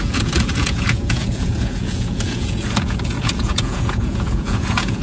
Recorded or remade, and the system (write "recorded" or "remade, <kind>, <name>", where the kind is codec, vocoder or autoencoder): remade, vocoder, Vocos